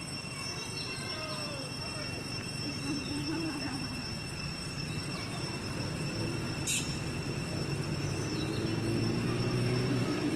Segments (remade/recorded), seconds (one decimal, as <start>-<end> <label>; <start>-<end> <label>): 0.0-8.7 remade; 8.7-10.0 recorded; 10.0-10.4 remade